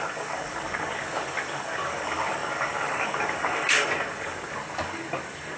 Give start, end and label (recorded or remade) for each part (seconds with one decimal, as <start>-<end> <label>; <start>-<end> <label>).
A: 0.0-5.6 remade